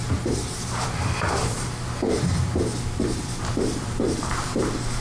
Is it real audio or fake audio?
fake